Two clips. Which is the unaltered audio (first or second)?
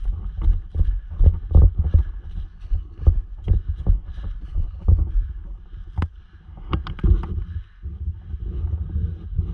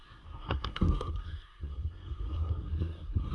first